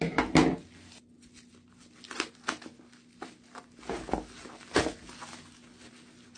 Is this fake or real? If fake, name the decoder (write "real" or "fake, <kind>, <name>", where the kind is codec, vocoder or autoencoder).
real